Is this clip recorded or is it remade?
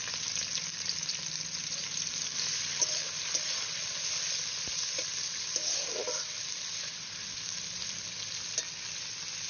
recorded